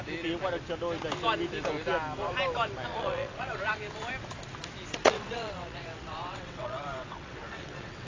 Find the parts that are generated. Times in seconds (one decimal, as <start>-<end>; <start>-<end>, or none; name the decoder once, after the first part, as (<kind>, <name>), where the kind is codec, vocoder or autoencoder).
2.9-3.6 (vocoder, WaveNeXt); 5.0-8.1

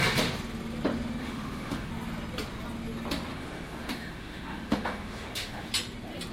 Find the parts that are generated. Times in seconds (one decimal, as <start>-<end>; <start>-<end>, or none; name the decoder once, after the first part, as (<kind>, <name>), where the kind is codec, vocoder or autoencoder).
1.2-1.9 (autoencoder, DAC-VAE); 3.3-5.7

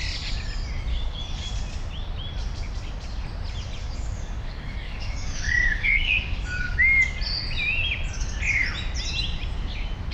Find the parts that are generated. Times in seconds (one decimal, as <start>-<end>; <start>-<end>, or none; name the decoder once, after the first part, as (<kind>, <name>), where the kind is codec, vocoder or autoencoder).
0.9-1.5 (codec, DAC); 3.8-7.0

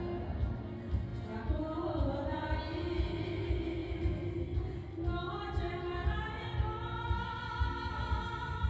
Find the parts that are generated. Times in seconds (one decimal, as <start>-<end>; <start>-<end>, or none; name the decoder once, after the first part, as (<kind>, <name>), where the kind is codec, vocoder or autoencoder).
none

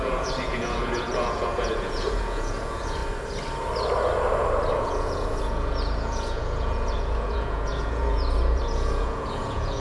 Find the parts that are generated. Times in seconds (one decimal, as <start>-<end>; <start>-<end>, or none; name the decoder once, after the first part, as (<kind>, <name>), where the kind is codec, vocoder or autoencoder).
0.0-3.0 (vocoder, Vocos); 4.8-9.8